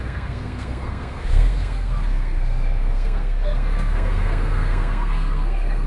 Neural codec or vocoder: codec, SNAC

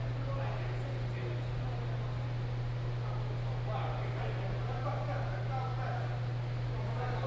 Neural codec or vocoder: none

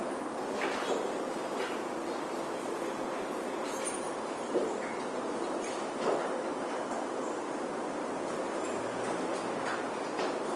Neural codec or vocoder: none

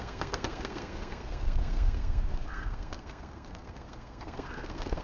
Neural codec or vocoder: codec, SNAC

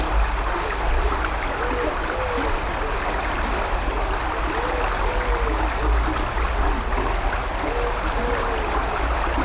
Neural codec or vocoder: none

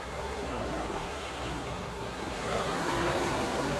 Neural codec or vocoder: codec, SNAC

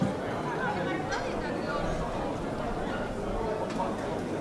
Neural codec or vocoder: none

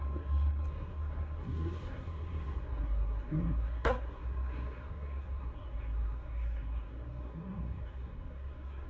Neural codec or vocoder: codec, SNAC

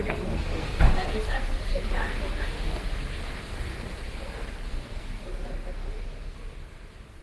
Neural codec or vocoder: codec, SNAC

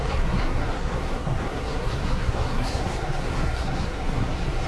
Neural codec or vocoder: codec, SNAC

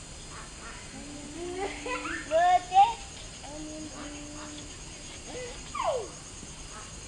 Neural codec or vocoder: none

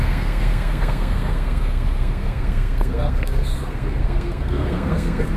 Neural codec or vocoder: codec, SNAC